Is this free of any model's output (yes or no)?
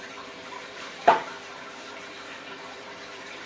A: no